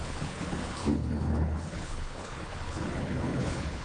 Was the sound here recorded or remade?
remade